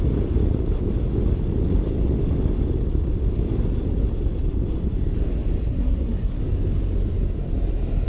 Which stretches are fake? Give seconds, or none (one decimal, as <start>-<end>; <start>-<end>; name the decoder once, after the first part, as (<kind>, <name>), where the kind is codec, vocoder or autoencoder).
5.7-6.4 (codec, SNAC)